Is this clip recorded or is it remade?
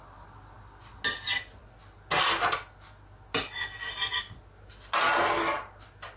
recorded